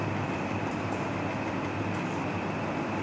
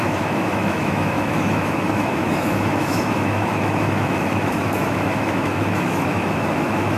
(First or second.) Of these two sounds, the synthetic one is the second